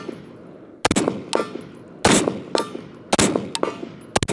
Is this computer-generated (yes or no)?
no